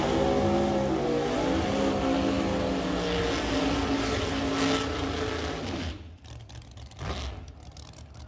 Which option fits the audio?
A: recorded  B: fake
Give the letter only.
A